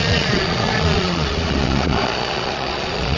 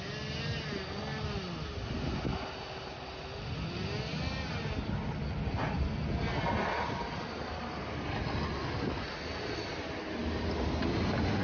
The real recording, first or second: second